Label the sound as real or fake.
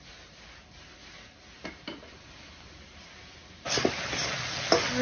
real